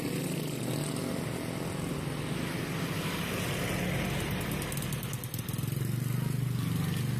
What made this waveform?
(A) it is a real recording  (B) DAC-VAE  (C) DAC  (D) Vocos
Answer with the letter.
A